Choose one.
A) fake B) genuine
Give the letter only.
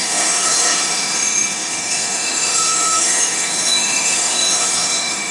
A